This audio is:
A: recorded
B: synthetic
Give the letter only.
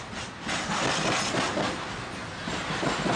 A